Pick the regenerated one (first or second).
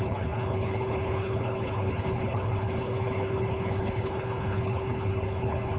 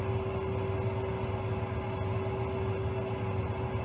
first